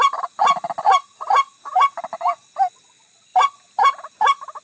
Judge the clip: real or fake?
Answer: real